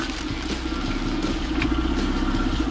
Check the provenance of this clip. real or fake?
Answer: real